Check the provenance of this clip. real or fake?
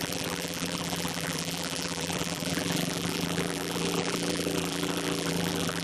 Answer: fake